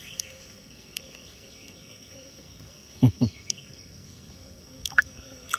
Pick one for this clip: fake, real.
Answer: fake